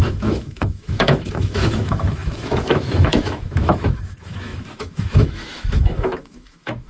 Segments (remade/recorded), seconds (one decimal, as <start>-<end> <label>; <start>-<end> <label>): 0.0-6.9 remade

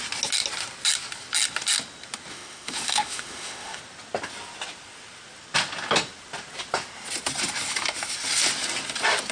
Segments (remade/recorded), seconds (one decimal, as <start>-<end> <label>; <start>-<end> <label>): 0.0-2.3 recorded; 2.3-3.8 remade; 3.8-9.3 recorded